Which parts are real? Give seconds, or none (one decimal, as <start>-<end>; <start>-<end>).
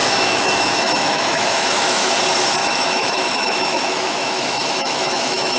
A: 2.1-2.6